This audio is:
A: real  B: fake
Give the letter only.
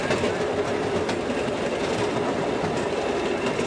A